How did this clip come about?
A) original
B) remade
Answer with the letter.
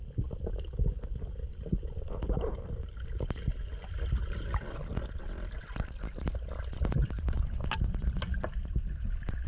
A